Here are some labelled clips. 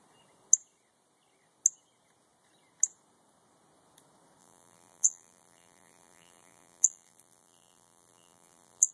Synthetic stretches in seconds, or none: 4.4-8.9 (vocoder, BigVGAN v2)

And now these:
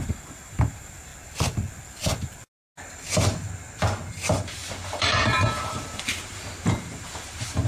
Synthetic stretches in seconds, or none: 0.0-1.1 (vocoder, BigVGAN v2); 4.1-7.7